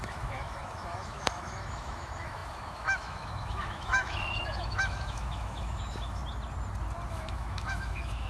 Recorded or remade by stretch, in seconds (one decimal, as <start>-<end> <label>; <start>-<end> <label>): 0.0-6.2 remade; 6.2-7.1 recorded; 7.1-8.3 remade